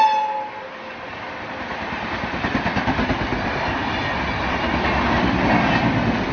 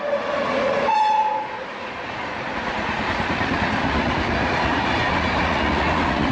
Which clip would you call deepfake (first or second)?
second